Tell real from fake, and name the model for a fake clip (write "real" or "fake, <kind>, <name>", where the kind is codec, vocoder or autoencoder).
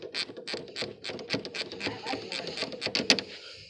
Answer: real